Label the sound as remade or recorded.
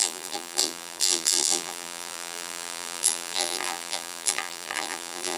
remade